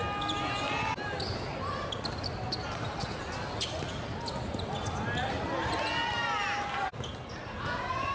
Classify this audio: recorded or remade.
recorded